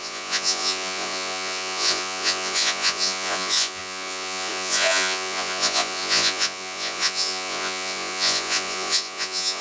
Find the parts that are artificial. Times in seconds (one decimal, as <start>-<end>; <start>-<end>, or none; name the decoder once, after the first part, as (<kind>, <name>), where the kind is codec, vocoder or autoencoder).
0.0-9.6 (vocoder, Vocos)